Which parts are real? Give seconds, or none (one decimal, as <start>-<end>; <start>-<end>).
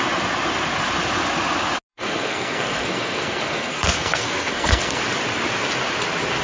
0.0-1.9; 5.0-6.4